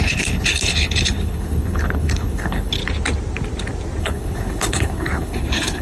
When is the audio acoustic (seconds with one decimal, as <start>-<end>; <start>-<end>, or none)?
2.8-4.0